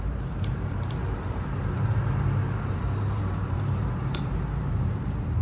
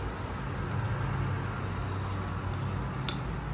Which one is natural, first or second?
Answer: second